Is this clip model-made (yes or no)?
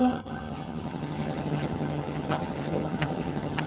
yes